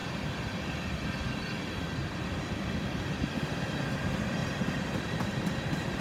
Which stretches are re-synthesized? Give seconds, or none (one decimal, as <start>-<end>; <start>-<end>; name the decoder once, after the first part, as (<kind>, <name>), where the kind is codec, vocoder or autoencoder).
4.4-6.0 (vocoder, BigVGAN v2)